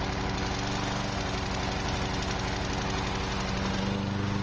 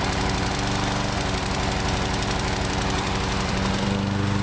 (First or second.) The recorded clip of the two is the first